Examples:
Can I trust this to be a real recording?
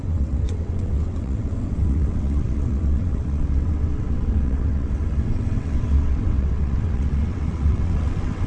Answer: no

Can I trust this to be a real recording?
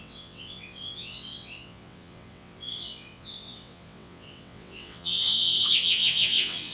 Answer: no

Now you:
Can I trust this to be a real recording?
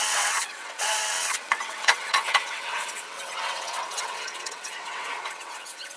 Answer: no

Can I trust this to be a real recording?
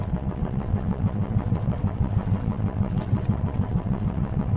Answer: no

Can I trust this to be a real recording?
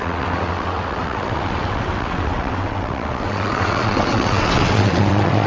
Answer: no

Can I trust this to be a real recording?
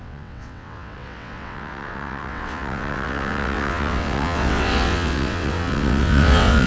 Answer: no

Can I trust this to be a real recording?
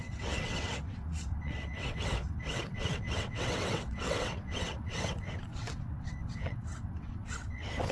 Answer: no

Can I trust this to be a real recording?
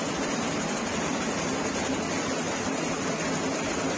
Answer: yes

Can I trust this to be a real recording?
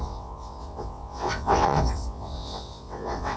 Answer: no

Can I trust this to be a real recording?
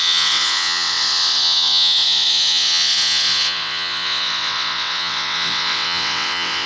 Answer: no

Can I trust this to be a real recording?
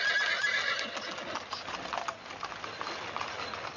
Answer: yes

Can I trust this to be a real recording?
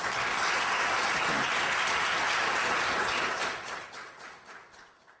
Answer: yes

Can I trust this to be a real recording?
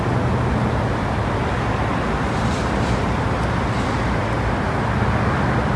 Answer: yes